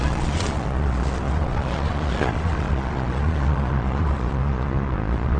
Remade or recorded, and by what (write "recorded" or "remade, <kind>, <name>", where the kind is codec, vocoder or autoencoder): remade, vocoder, Vocos